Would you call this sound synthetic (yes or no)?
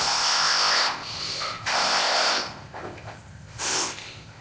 yes